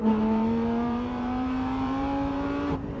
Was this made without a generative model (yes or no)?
no